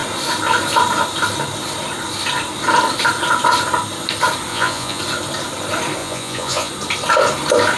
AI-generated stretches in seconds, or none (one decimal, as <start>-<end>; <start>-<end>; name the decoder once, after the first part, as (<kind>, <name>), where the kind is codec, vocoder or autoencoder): 4.5-5.0 (vocoder, Vocos); 6.0-6.7